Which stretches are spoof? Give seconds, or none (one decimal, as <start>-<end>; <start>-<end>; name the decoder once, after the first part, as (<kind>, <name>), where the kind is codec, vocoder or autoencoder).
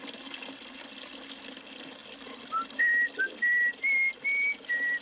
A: none